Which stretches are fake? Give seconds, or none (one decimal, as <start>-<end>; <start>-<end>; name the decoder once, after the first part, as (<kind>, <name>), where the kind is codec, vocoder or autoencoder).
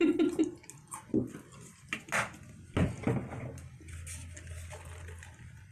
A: none